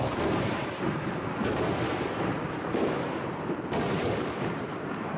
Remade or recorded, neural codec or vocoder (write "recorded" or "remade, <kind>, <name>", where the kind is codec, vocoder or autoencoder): remade, vocoder, BigVGAN v2